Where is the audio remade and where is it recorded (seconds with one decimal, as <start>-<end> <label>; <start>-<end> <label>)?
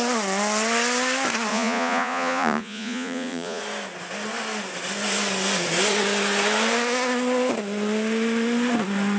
0.0-1.5 recorded; 1.5-3.6 remade; 3.6-9.2 recorded